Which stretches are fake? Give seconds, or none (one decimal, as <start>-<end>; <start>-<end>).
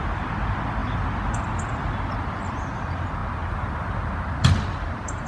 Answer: none